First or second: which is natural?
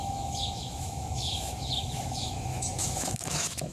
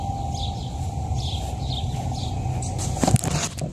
second